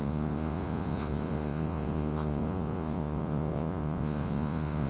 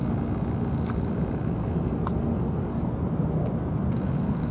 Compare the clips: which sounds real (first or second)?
second